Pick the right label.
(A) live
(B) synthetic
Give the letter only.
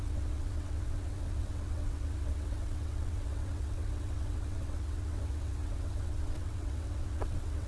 B